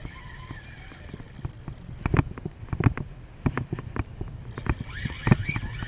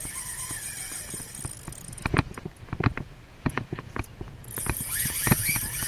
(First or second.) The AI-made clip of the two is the second